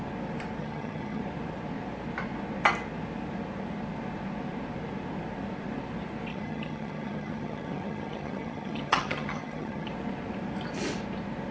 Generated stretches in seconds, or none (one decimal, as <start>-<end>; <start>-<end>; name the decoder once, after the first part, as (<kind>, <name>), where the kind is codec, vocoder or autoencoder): 0.6-1.2 (vocoder, HiFi-GAN); 6.3-9.9